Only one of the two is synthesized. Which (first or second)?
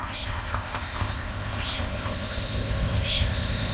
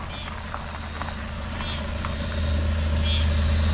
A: first